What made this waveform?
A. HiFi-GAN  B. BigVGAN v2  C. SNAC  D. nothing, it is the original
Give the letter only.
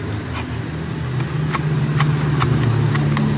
D